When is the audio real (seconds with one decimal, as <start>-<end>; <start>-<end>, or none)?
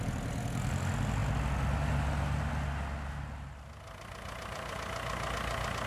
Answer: 0.0-5.9